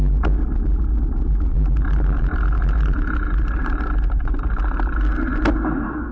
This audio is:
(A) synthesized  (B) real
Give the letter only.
B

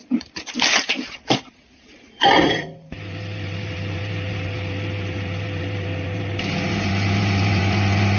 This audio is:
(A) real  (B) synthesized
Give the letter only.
B